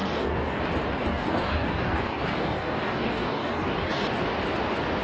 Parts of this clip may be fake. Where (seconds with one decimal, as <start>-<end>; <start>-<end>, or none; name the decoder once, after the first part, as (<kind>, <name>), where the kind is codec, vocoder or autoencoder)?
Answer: 0.0-0.6 (codec, DAC); 1.1-4.0